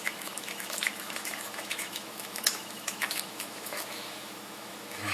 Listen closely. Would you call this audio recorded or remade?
remade